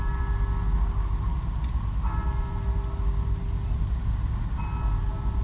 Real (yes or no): yes